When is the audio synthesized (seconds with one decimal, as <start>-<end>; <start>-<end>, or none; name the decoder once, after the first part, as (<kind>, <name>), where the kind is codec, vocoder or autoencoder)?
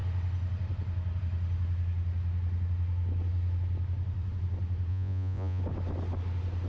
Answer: 4.9-5.6 (vocoder, Vocos)